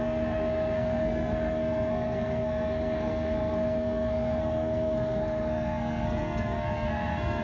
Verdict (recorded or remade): remade